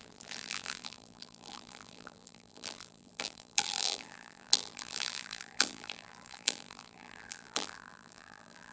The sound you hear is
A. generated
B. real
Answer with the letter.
A